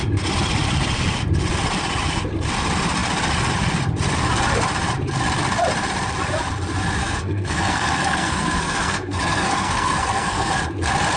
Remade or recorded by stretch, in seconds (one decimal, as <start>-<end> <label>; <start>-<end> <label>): 0.0-7.0 recorded; 7.0-10.5 remade; 10.5-11.2 recorded